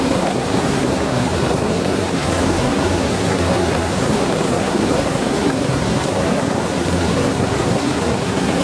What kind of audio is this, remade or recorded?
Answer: remade